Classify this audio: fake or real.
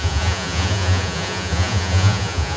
fake